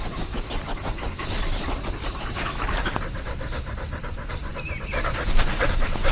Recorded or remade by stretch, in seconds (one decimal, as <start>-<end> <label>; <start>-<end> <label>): 0.0-6.1 recorded